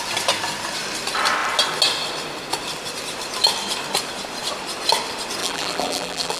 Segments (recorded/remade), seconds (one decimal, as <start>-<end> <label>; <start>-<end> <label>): 0.0-5.4 recorded; 5.4-6.4 remade